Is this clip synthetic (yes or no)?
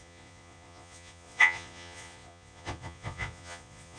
yes